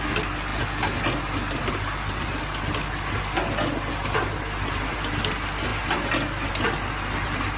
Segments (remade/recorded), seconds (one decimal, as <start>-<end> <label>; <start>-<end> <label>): 0.0-7.6 recorded